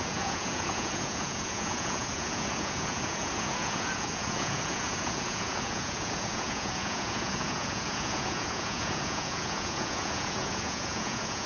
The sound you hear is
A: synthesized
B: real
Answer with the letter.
A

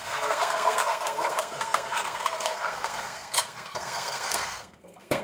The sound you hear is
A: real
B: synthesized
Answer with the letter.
B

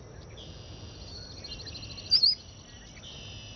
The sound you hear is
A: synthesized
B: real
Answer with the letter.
B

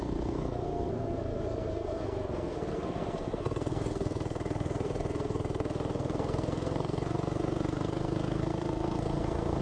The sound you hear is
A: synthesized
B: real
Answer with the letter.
A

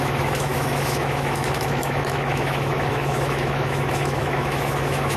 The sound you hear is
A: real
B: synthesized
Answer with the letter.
B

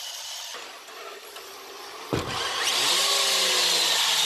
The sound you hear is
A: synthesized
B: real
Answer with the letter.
B